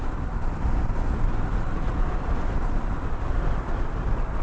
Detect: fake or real real